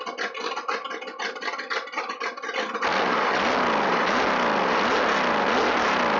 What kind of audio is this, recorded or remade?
recorded